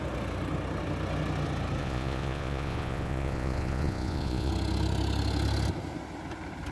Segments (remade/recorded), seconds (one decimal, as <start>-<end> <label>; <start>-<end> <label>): 0.0-1.8 recorded; 1.8-4.5 remade; 4.5-6.7 recorded

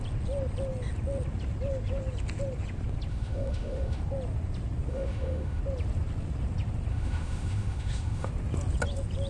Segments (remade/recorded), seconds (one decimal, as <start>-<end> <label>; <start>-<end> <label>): 0.0-3.1 recorded; 3.1-4.0 remade; 4.0-4.9 recorded; 4.9-5.6 remade; 5.6-6.9 recorded; 6.9-8.3 remade; 8.3-9.3 recorded